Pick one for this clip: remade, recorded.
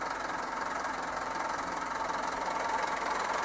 remade